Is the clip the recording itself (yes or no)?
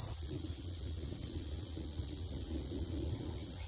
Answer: no